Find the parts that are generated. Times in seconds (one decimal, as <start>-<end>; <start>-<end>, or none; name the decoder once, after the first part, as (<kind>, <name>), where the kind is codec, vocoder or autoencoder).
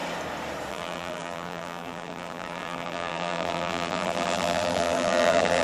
0.7-5.6 (vocoder, BigVGAN v2)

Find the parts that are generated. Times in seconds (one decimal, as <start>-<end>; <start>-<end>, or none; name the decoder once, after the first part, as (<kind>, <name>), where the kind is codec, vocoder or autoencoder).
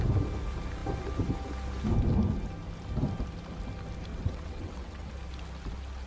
4.1-5.1 (vocoder, WaveNeXt)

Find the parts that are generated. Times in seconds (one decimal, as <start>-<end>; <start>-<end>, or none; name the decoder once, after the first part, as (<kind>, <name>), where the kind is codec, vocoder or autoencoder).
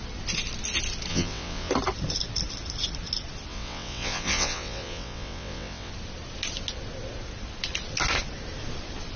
1.1-1.7 (vocoder, WaveNeXt); 3.5-5.9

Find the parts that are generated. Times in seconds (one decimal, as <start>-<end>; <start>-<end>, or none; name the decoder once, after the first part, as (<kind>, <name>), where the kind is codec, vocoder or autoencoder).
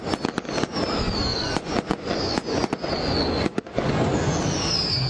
1.3-4.4 (vocoder, Vocos)